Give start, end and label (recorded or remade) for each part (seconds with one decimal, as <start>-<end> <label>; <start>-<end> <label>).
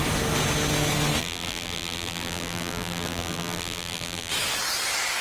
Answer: 0.0-1.2 recorded; 1.2-4.3 remade; 4.3-5.2 recorded